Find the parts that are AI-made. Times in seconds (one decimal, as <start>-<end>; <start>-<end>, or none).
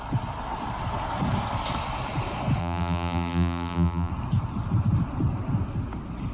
2.6-4.1